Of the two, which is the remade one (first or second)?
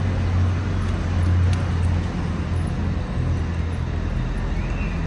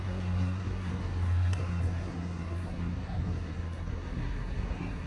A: second